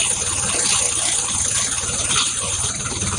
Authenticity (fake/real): fake